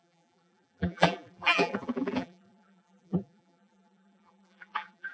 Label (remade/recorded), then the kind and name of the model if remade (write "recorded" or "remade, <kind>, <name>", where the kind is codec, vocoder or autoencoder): remade, vocoder, BigVGAN v2